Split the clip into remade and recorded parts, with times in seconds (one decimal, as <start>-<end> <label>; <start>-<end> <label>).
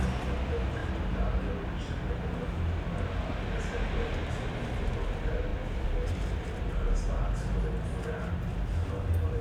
0.0-0.8 recorded; 0.8-2.1 remade; 2.1-9.4 recorded